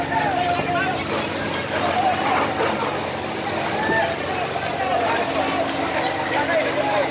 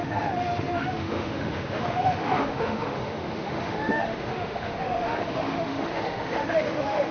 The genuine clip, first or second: first